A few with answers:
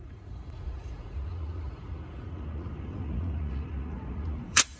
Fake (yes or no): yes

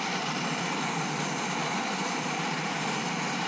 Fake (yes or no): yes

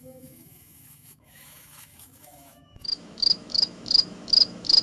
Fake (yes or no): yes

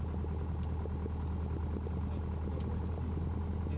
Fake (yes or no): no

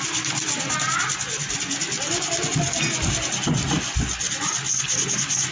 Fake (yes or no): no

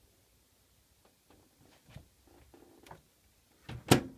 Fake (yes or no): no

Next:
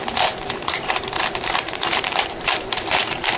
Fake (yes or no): yes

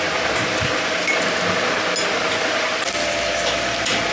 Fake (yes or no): no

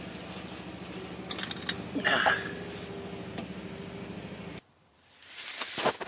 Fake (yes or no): no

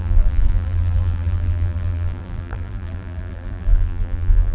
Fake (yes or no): yes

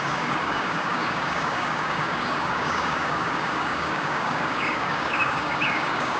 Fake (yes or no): yes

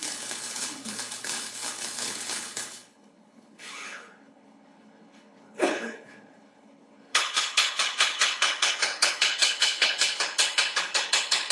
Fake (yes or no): yes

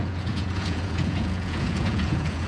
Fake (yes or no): yes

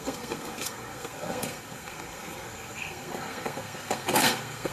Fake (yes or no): yes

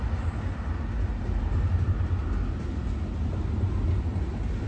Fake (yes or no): no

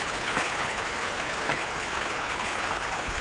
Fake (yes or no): yes